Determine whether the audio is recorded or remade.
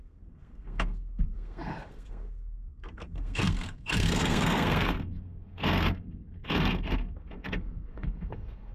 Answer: remade